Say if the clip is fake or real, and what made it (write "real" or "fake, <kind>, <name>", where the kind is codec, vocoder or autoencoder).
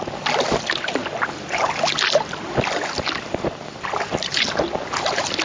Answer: real